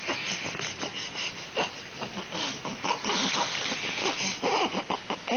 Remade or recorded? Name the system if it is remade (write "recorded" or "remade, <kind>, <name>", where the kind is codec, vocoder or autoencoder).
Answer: recorded